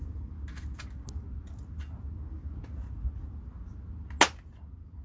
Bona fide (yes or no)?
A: yes